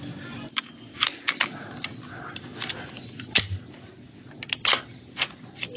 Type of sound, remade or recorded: recorded